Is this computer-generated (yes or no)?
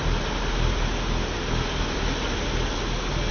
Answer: no